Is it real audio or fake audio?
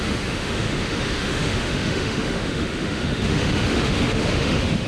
fake